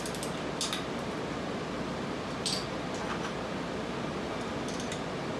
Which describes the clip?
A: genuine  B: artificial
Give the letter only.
A